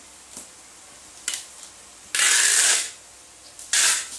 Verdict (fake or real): real